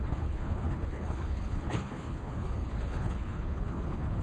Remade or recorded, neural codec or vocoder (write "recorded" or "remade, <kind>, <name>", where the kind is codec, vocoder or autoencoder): remade, codec, HILCodec